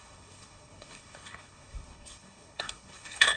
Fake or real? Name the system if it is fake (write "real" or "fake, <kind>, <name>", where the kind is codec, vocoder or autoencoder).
fake, codec, HILCodec